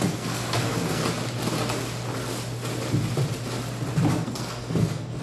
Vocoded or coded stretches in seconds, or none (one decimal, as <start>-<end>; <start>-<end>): 0.0-1.0; 4.1-5.2